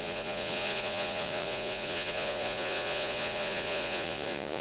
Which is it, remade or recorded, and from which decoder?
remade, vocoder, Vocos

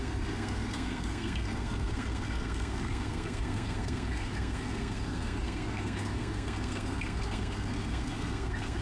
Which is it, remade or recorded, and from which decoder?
remade, codec, SNAC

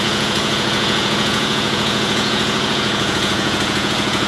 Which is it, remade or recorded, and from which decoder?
remade, vocoder, Vocos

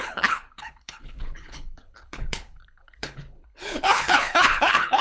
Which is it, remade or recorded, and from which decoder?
remade, codec, HILCodec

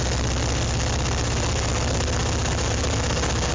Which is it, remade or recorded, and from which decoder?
recorded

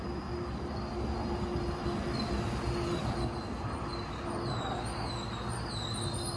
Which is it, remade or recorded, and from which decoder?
recorded